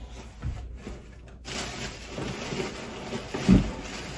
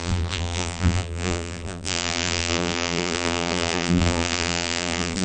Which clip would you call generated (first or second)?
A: second